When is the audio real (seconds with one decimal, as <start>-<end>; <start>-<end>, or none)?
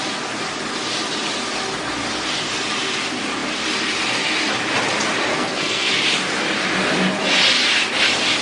0.0-5.3; 5.9-8.4